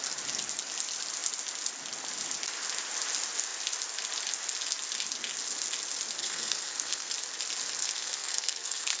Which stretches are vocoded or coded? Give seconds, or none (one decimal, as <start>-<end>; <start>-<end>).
6.2-7.1; 7.8-9.0